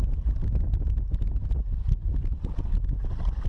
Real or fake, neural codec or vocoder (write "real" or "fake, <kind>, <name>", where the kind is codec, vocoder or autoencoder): real